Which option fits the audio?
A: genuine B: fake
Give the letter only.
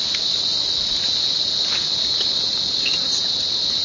A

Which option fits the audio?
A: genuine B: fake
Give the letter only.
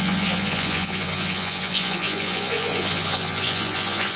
B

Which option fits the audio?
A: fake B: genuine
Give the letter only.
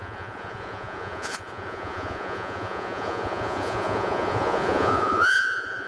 A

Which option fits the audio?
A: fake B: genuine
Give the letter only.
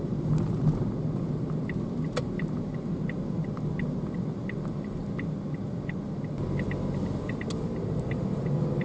B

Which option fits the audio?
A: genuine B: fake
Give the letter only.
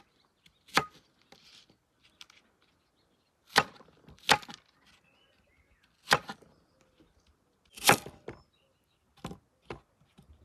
A